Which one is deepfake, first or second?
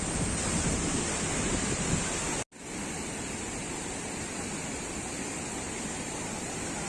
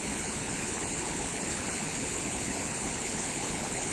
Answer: second